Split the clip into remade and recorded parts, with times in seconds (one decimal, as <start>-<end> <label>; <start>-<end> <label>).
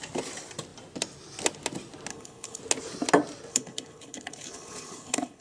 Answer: 0.0-2.1 recorded; 2.1-2.6 remade; 2.6-3.5 recorded; 3.5-5.4 remade